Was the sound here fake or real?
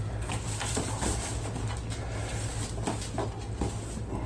real